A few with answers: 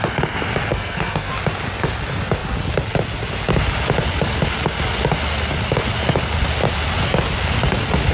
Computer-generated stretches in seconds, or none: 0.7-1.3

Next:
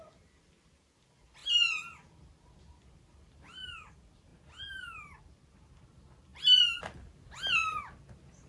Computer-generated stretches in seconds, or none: none

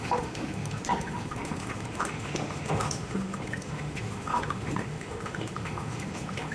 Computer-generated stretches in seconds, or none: 0.0-6.5

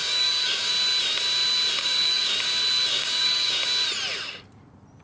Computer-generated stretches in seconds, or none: 0.0-0.7; 1.8-2.3; 2.9-3.6

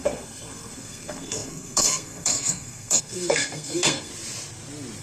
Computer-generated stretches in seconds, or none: 0.0-4.1

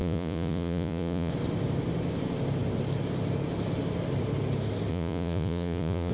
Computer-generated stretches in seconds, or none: 0.0-1.3; 4.9-6.1

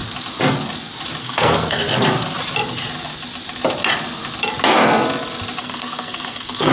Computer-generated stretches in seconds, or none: 1.2-1.8; 5.6-6.7